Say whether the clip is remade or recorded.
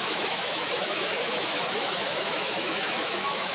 remade